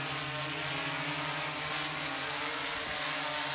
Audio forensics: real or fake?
real